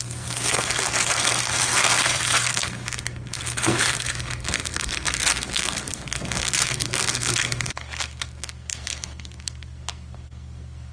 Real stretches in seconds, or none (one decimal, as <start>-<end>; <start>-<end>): none